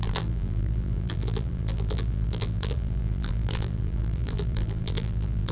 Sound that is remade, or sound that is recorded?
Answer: remade